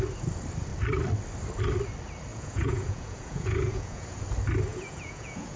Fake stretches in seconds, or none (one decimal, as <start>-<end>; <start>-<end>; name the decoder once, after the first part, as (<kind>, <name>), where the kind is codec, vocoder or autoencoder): 2.3-4.2 (vocoder, Vocos); 4.7-5.6